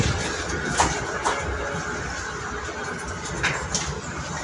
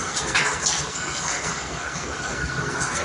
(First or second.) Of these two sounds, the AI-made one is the second